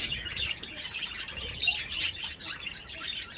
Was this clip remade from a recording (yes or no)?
yes